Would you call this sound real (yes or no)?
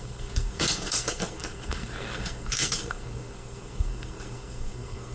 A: no